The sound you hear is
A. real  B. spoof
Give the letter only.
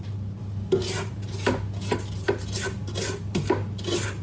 A